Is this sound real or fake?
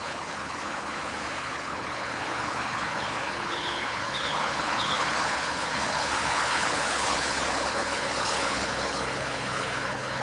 fake